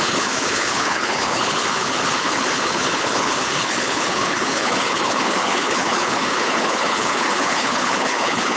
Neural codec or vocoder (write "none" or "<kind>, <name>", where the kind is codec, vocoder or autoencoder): codec, HILCodec